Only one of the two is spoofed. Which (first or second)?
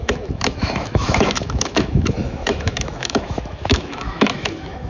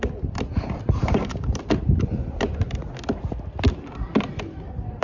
first